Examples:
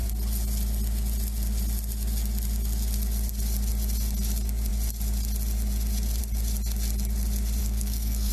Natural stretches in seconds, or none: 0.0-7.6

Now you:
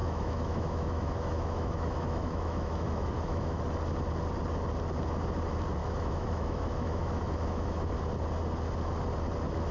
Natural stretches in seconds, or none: 3.6-5.8; 7.9-9.7